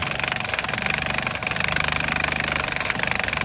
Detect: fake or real real